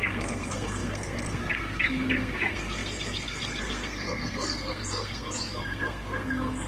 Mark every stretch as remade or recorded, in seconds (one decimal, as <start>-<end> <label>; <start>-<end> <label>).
0.0-6.7 remade